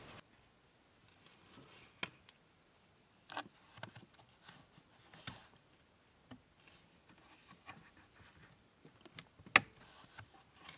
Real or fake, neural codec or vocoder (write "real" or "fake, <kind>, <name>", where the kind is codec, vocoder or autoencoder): real